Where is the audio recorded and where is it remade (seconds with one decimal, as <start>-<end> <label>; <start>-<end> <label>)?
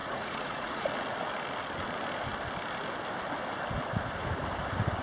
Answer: 0.0-0.9 remade; 0.9-5.0 recorded